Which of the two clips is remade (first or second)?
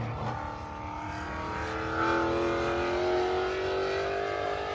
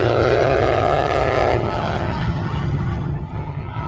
second